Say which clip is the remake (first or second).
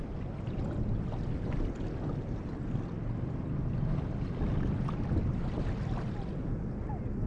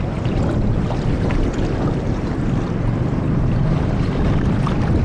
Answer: second